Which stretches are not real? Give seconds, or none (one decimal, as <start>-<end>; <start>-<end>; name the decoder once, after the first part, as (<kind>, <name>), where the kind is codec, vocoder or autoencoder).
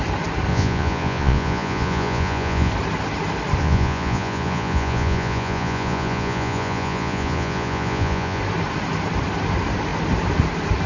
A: 0.5-2.7 (vocoder, Vocos); 3.6-8.4